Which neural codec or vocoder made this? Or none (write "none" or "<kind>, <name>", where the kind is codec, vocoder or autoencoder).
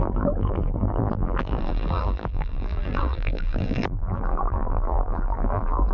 vocoder, BigVGAN v2